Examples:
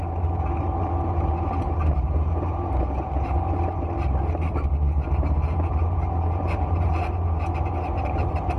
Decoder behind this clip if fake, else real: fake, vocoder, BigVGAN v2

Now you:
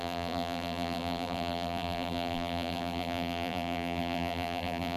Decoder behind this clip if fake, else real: fake, vocoder, BigVGAN v2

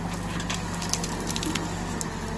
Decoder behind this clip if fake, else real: real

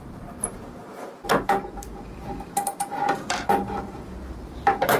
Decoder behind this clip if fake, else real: fake, vocoder, BigVGAN v2